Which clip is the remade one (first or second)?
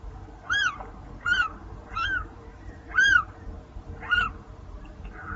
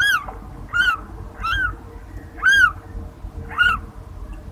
first